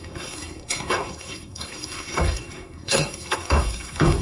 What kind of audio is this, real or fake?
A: fake